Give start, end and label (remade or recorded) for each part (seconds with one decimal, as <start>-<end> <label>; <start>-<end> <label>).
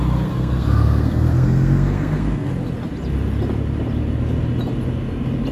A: 0.0-2.5 remade; 2.5-5.5 recorded